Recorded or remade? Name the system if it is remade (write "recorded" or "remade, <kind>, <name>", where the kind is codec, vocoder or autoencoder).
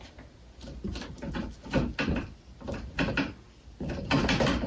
recorded